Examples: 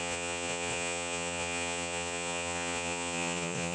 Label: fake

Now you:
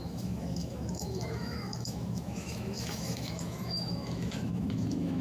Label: fake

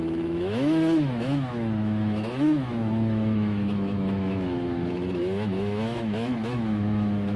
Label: fake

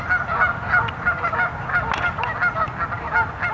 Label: real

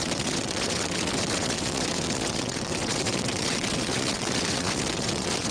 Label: fake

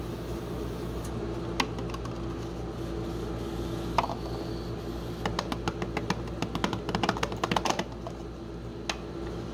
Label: real